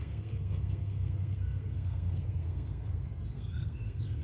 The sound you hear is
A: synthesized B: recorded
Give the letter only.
A